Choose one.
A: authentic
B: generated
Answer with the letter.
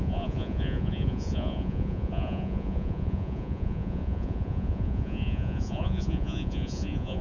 B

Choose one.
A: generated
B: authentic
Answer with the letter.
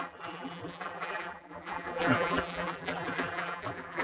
A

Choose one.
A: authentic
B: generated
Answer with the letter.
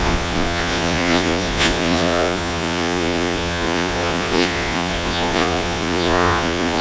B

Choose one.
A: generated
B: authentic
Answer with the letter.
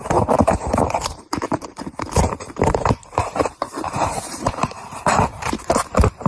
A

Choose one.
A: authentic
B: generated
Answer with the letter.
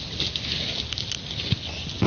A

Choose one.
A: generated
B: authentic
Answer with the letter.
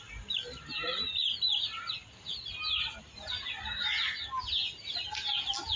B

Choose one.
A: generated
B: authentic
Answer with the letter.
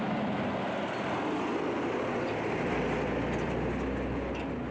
B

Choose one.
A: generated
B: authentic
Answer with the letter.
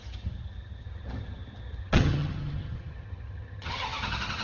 A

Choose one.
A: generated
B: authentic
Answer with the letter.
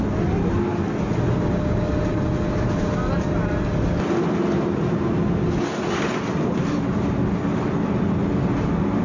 B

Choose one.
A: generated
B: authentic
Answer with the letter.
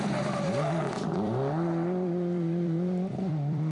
A